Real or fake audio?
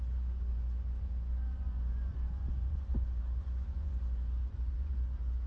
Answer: fake